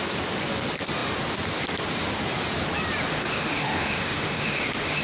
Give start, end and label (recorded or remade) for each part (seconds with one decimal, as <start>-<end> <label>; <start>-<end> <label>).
0.0-3.1 recorded; 3.1-5.0 remade